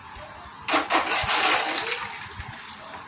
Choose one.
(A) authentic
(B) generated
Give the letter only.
A